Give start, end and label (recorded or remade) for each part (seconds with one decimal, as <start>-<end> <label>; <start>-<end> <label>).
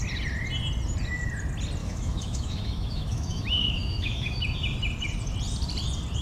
0.0-1.8 recorded; 1.8-4.4 remade; 4.4-6.2 recorded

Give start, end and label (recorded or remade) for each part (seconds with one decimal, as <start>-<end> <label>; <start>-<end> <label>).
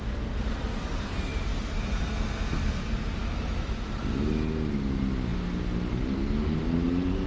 0.0-3.2 recorded; 3.2-3.7 remade; 3.7-7.3 recorded